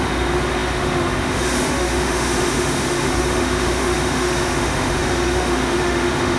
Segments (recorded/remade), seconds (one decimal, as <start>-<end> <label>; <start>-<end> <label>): 0.0-6.4 remade